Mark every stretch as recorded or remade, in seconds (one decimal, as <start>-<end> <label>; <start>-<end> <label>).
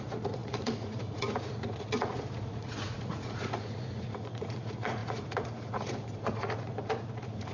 0.0-7.5 remade